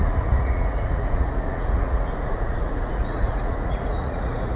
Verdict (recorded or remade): remade